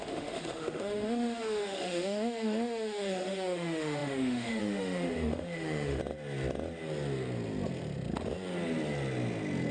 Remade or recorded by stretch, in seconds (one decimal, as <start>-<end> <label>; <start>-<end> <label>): 0.0-6.0 remade; 6.0-9.7 recorded